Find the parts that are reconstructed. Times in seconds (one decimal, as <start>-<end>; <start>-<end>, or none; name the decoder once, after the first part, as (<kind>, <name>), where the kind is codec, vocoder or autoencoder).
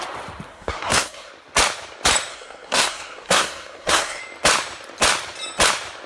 0.5-1.3 (codec, SNAC); 2.3-4.2